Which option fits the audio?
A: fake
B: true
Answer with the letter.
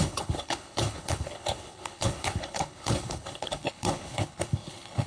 A